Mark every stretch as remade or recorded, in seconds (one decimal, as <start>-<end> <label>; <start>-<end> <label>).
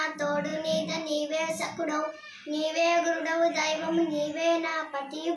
0.0-5.4 recorded